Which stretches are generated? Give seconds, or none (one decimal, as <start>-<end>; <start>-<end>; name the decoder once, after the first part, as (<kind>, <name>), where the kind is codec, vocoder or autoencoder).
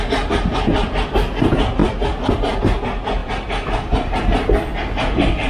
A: none